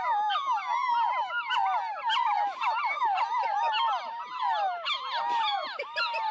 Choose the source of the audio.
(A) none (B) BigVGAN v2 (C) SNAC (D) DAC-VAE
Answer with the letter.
A